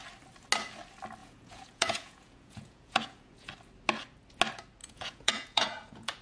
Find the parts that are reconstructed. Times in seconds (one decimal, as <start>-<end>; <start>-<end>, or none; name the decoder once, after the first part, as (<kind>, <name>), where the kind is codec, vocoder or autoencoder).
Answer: 1.2-3.5 (vocoder, Vocos); 4.8-6.2